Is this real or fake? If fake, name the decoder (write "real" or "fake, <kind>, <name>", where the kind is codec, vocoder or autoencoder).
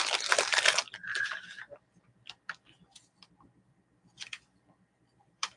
fake, vocoder, BigVGAN v2